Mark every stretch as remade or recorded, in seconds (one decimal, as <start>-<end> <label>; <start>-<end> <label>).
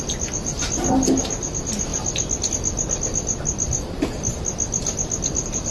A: 0.0-5.7 recorded